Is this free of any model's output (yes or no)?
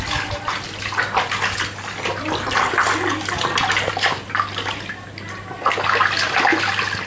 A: yes